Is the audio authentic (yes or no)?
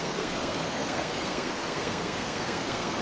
no